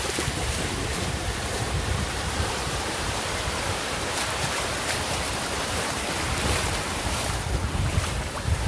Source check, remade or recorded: remade